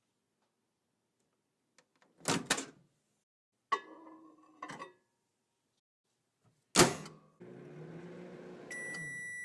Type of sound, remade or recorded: recorded